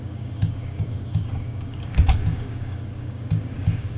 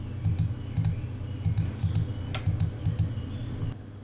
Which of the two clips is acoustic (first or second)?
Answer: second